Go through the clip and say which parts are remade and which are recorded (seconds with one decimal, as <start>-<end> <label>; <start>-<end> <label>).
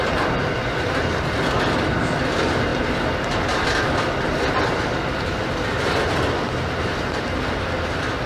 0.0-8.3 recorded